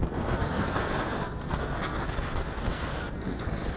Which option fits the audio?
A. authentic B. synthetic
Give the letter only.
B